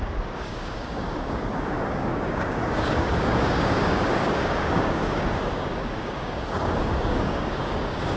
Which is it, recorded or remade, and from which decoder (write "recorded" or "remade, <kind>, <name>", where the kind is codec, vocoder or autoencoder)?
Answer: remade, codec, DAC